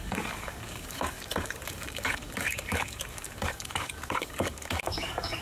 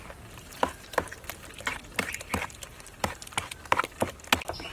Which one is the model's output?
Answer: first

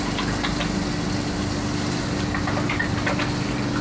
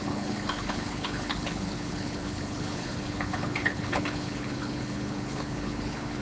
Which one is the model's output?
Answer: second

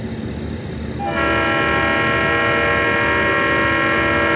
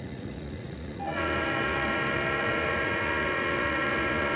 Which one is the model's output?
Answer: second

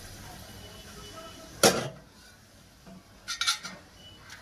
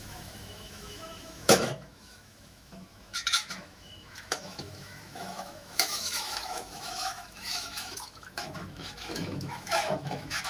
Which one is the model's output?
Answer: second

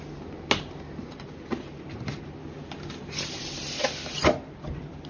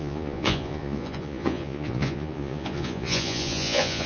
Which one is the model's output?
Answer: second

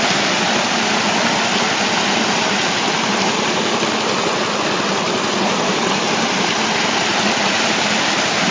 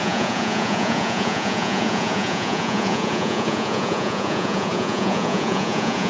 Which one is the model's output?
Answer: second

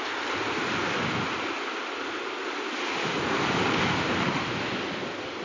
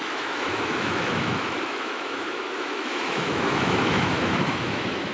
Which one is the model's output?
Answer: second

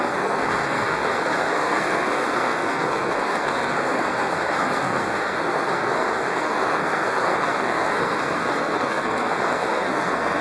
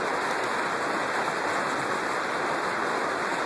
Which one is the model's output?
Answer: first